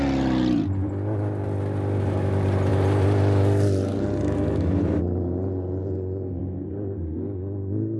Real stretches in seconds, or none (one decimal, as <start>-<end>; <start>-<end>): 0.0-8.0